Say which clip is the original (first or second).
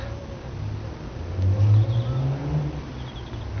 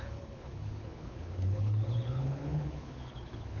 first